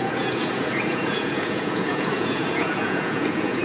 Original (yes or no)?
no